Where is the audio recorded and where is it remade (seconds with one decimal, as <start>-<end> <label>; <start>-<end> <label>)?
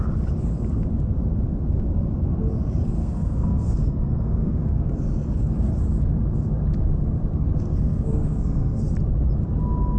0.0-3.0 recorded; 3.0-4.9 remade; 4.9-7.8 recorded; 7.8-8.8 remade; 8.8-10.0 recorded